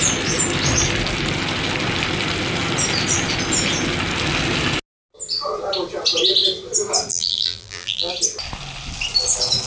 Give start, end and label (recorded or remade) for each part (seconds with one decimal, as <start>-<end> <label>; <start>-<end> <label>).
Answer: 0.0-7.1 recorded; 7.1-8.1 remade; 8.1-9.7 recorded